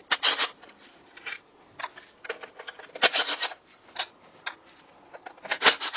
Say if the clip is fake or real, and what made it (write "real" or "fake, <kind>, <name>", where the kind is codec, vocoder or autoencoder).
real